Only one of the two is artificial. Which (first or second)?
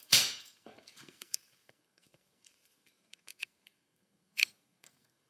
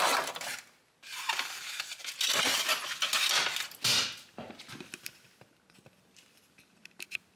first